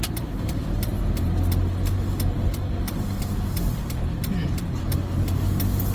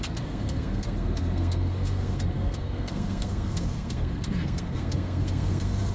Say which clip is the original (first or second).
first